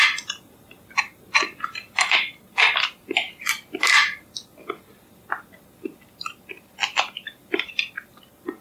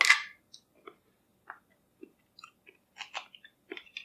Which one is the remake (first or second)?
first